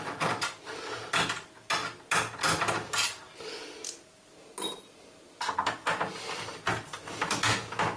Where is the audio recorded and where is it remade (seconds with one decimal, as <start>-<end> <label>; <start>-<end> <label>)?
0.0-8.0 recorded